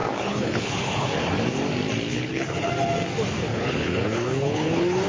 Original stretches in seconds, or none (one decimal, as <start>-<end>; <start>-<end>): 1.4-2.1; 2.7-3.5